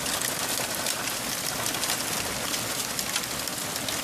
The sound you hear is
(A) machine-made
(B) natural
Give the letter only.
B